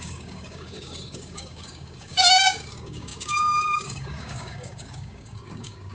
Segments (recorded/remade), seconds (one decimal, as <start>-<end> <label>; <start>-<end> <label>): 0.0-5.9 remade